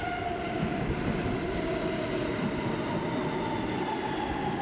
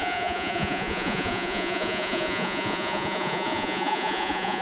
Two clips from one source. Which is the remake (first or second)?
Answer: second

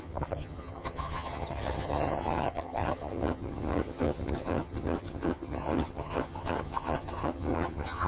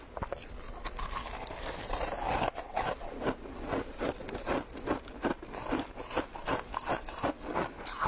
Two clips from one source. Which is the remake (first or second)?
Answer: first